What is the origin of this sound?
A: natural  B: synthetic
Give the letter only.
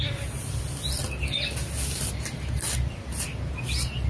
A